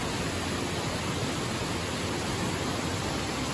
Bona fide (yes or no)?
yes